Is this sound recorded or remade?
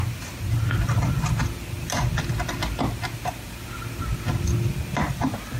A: recorded